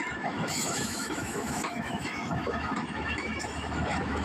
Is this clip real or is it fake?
fake